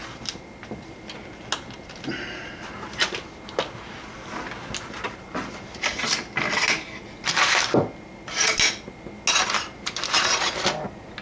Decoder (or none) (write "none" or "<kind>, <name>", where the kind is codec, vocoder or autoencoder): none